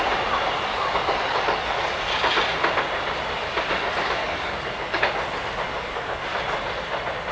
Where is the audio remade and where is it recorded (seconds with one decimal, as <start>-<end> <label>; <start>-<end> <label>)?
0.0-0.7 recorded; 0.7-2.0 remade; 2.0-4.2 recorded; 4.2-5.0 remade; 5.0-5.7 recorded; 5.7-6.2 remade; 6.2-7.3 recorded